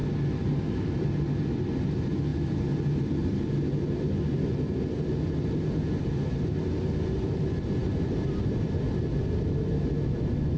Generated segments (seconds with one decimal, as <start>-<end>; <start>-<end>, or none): none